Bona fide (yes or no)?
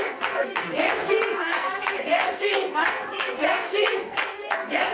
no